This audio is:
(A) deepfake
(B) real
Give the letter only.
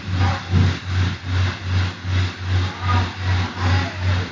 B